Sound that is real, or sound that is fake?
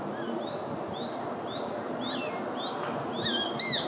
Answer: real